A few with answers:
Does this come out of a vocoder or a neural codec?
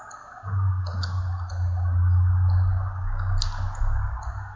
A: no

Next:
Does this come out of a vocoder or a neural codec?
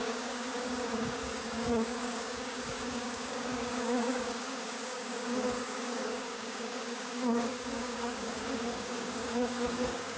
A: yes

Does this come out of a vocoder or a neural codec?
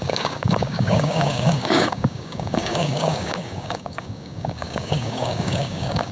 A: yes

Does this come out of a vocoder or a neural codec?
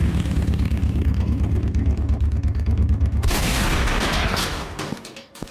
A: yes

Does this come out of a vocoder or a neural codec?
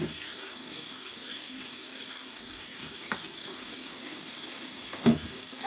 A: yes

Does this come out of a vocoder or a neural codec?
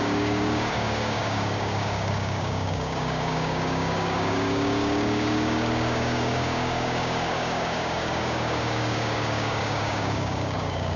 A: yes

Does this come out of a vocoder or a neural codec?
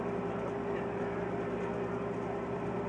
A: no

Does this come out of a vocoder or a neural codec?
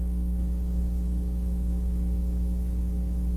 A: yes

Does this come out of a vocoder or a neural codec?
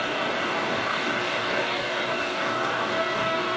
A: yes